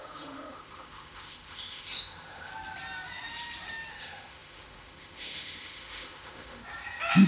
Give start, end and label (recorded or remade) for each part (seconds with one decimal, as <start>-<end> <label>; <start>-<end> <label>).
0.0-2.5 remade; 2.5-3.9 recorded; 3.9-6.6 remade; 6.6-7.3 recorded